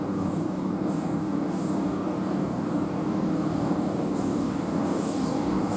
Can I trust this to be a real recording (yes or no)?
no